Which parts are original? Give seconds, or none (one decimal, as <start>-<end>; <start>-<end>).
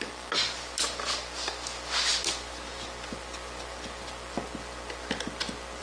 0.0-5.8